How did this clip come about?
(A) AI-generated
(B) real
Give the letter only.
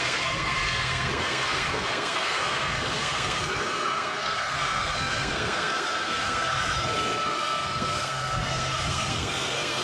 A